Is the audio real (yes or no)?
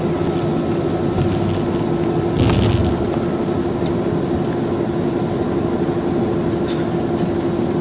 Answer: yes